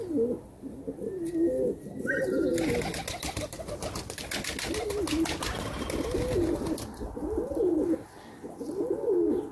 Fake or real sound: real